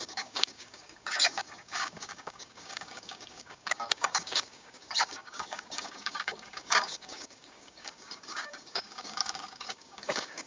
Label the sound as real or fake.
fake